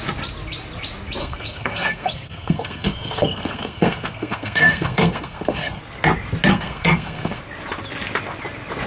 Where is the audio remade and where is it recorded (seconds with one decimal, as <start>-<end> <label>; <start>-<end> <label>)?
0.0-1.2 recorded; 1.2-5.8 remade; 5.8-6.5 recorded; 6.5-7.4 remade; 7.4-8.9 recorded